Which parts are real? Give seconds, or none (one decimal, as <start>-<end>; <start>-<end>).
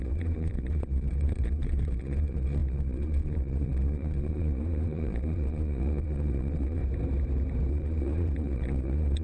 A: 6.8-7.7